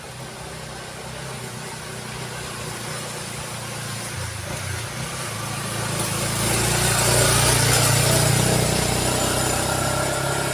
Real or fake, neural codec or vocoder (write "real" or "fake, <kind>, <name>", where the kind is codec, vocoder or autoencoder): real